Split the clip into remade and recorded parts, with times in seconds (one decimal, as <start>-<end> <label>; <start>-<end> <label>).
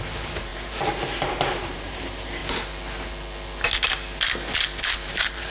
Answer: 0.0-2.4 remade; 2.4-4.8 recorded; 4.8-5.5 remade